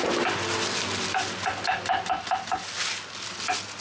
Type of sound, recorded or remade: recorded